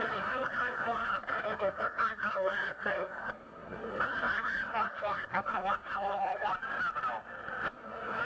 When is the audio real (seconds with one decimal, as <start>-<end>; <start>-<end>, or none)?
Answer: 6.5-7.7